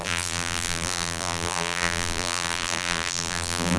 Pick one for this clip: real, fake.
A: fake